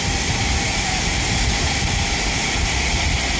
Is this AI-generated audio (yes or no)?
no